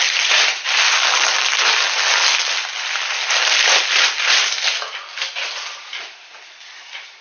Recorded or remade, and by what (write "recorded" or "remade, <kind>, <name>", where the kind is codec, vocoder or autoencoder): recorded